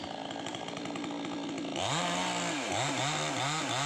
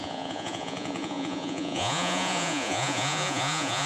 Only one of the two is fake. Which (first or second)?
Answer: second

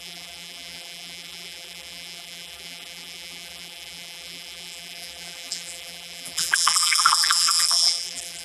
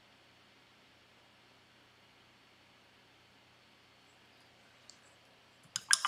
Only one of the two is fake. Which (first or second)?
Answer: first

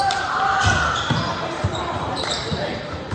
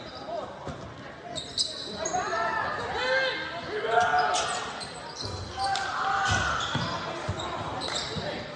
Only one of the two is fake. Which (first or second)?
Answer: first